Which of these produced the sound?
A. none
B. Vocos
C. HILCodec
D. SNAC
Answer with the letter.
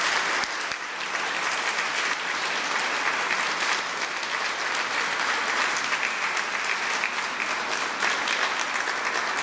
A